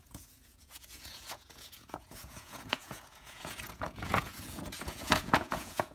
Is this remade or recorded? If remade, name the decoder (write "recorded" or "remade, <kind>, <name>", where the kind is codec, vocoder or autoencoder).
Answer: remade, vocoder, Vocos